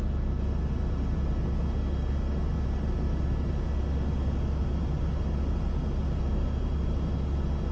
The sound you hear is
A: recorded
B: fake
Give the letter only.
A